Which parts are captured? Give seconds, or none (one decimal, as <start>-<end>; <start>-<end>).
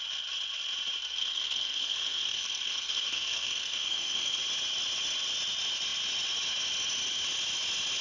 0.0-1.0; 4.4-8.0